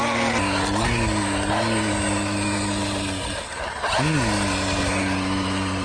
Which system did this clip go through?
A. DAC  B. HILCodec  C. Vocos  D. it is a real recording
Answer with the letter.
D